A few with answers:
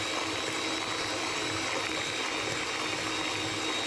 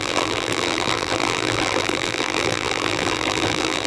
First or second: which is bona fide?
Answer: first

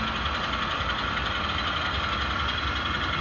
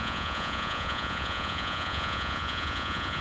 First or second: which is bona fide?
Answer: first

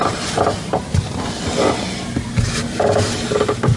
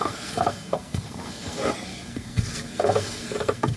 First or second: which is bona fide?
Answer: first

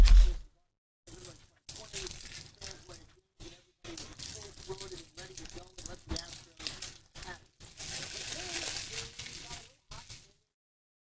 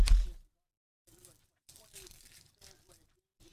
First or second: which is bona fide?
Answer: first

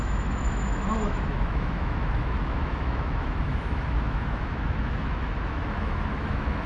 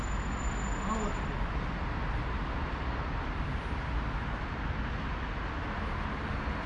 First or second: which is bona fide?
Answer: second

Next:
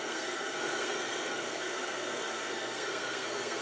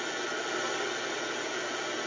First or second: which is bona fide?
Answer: second